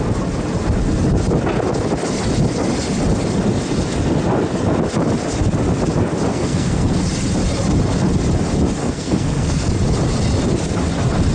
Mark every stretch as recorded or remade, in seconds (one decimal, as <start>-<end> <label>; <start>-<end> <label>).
0.0-6.3 recorded; 6.3-7.0 remade; 7.0-8.8 recorded; 8.8-9.7 remade; 9.7-11.3 recorded